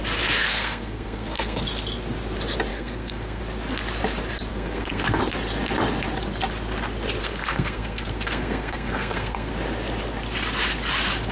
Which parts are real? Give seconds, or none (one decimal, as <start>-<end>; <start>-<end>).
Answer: 0.0-0.4; 1.6-2.7; 3.4-4.5; 5.2-7.2; 9.5-11.3